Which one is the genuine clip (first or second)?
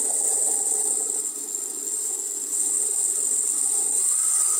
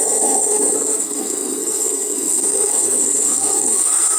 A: first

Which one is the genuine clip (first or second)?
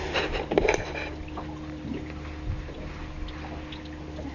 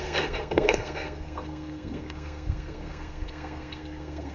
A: first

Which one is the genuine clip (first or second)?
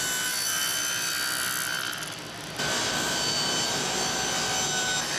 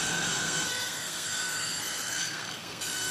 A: first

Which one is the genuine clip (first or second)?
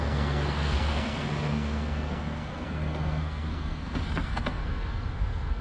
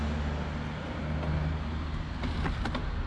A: second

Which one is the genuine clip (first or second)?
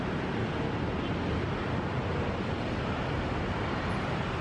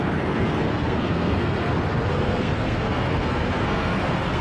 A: first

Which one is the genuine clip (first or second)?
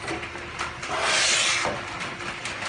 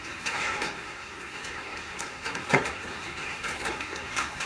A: first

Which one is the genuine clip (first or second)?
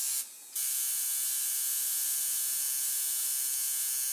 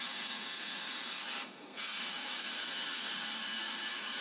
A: first